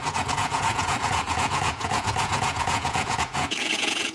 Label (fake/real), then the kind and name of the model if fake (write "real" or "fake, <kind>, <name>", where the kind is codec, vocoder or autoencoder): fake, vocoder, Vocos